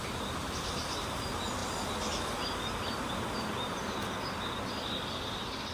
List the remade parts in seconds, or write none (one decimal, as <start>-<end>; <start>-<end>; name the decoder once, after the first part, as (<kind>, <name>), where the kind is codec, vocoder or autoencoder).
none